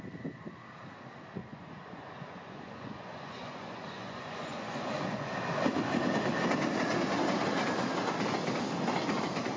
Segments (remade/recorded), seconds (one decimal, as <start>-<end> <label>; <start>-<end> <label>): 0.0-1.4 recorded; 1.4-5.3 remade; 5.3-9.6 recorded